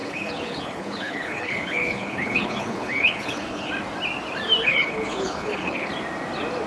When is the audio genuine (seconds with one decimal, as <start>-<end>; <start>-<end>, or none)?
3.7-4.6; 5.9-6.7